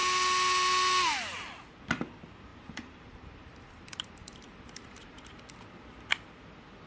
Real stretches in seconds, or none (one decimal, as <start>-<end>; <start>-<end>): 0.0-2.5; 5.4-6.9

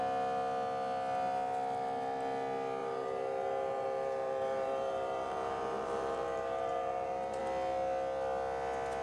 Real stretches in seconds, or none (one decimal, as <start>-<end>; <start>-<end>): 0.0-2.8; 7.4-9.0

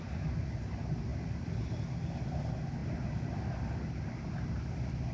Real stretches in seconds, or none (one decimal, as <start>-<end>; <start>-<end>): 0.0-5.1

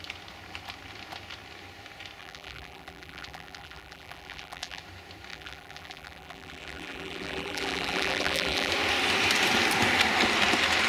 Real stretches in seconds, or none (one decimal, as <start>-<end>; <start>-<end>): 0.0-2.2; 4.8-5.3; 8.7-10.9

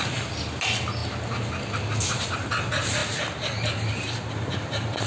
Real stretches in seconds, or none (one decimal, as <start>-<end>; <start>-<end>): 0.0-5.1

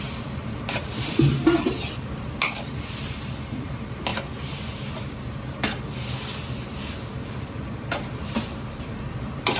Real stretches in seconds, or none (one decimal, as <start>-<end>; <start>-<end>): 4.1-6.9